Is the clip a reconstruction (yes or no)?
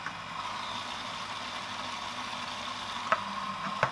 no